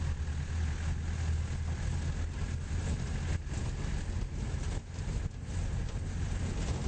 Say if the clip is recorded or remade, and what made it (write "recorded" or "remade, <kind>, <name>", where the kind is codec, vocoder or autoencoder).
recorded